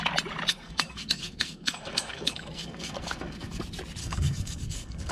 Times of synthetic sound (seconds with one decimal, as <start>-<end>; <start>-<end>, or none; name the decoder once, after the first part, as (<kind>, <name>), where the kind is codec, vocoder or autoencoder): 0.5-3.6 (codec, SNAC); 4.0-5.1